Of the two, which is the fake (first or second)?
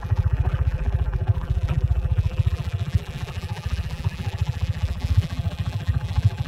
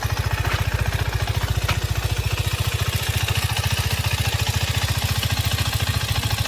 first